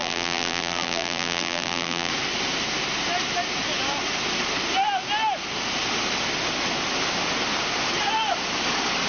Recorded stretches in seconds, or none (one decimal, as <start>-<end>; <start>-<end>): 2.1-9.1